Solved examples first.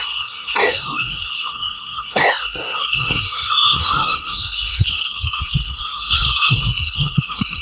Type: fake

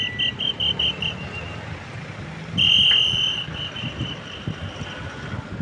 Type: real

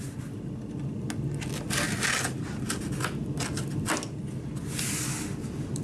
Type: real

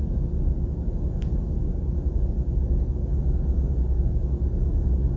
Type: real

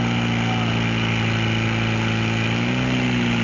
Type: real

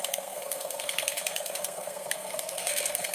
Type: fake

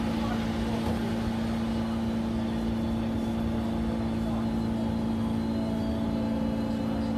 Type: real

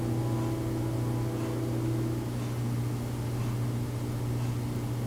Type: real